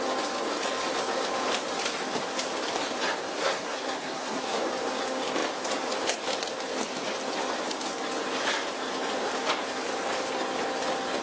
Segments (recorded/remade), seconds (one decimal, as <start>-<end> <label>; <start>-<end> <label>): 0.0-3.3 recorded; 3.3-4.6 remade; 4.6-11.2 recorded